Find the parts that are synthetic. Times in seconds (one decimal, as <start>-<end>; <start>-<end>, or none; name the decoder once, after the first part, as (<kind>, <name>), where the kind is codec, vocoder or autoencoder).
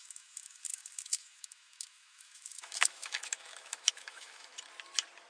0.0-4.5 (autoencoder, DAC-VAE)